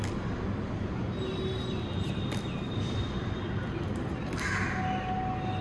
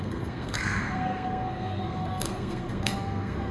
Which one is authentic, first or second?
first